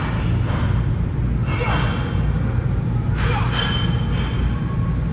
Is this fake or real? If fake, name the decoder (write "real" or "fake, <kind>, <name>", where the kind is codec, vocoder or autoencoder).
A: real